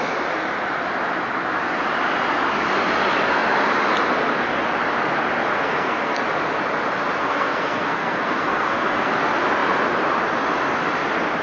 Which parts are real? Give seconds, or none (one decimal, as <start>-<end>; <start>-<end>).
0.0-5.5; 6.2-7.2; 9.1-11.4